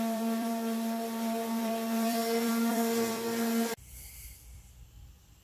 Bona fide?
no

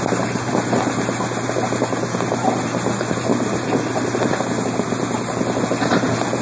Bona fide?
yes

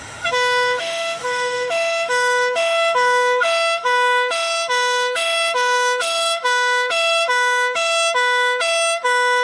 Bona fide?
no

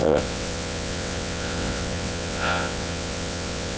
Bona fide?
no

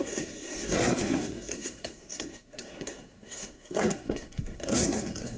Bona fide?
no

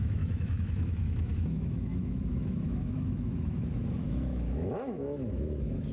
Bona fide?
no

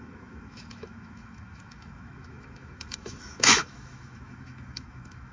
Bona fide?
no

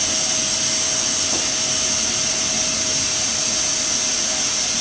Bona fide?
yes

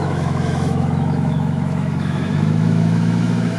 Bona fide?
no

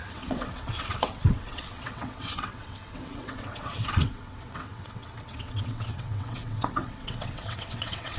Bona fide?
no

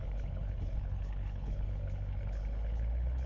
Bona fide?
no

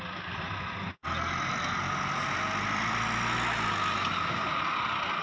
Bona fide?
yes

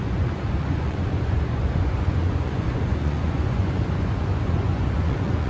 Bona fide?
no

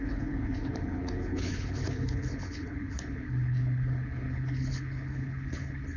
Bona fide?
no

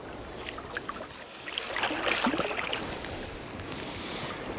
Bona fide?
yes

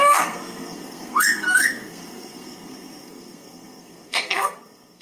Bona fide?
no